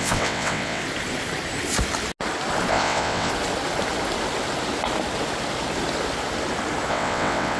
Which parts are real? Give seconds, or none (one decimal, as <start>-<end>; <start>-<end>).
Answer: 0.8-2.7; 3.3-6.9